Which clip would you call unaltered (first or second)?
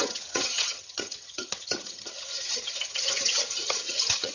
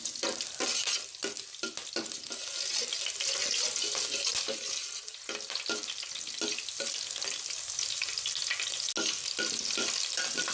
second